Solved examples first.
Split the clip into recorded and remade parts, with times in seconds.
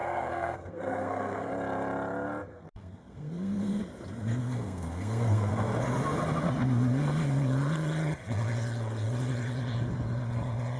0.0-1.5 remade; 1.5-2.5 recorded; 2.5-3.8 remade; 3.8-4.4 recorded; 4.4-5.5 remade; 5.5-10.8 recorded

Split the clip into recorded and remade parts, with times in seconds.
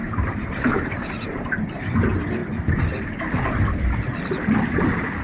0.0-1.4 remade; 1.4-5.2 recorded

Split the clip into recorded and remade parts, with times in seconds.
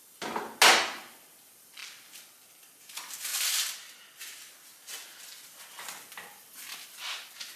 0.0-7.6 recorded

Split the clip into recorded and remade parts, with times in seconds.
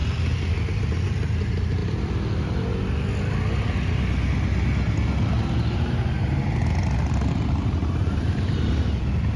0.0-7.8 recorded; 7.8-9.4 remade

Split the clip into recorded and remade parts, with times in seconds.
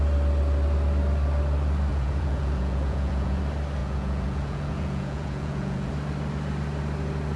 0.0-1.9 recorded; 1.9-3.4 remade; 3.4-3.8 recorded; 3.8-5.9 remade; 5.9-7.4 recorded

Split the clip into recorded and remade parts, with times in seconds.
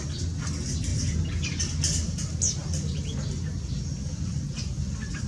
0.0-2.6 recorded; 2.6-5.3 remade